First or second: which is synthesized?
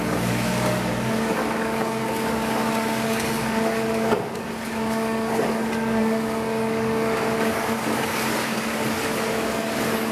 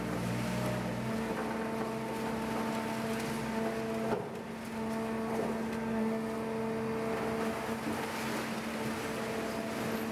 first